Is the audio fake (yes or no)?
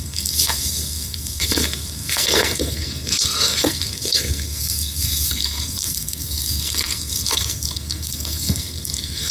yes